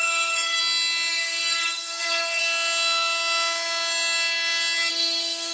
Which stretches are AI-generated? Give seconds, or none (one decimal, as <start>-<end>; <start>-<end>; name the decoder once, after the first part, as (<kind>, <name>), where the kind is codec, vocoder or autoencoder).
0.0-0.6 (codec, SNAC); 1.1-2.4; 4.9-5.5

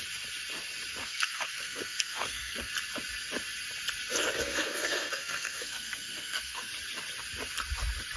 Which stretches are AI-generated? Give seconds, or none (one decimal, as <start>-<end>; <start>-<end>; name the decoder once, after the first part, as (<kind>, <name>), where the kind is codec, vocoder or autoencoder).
1.0-2.7 (codec, SNAC); 4.4-6.7

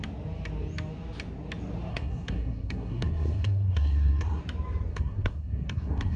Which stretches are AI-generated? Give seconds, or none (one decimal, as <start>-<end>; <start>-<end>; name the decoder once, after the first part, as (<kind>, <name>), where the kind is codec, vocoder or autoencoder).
1.9-4.4 (codec, SNAC); 4.9-6.2

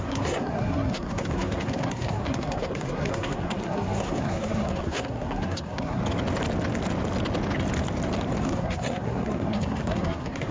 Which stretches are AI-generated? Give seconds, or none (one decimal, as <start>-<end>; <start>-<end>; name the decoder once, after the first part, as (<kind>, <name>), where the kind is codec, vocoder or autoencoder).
0.0-6.0 (codec, SNAC); 8.4-10.5

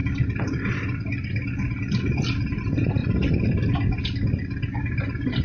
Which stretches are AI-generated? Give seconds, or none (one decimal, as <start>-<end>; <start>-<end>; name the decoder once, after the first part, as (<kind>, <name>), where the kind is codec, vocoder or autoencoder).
none

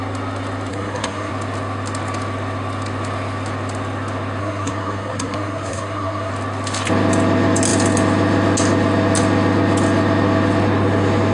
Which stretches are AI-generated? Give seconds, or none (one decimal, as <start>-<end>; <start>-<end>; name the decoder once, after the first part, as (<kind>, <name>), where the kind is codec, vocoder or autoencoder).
0.7-1.3 (codec, SNAC); 4.4-6.3

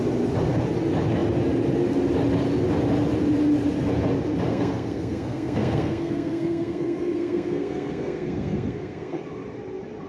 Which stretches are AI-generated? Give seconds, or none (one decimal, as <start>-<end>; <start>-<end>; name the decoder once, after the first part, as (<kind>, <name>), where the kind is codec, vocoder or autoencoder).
4.5-9.2 (codec, SNAC)

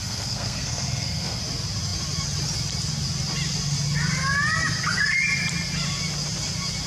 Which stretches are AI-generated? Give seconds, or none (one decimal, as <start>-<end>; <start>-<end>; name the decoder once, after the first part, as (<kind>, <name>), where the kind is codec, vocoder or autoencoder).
0.0-1.4 (codec, SNAC)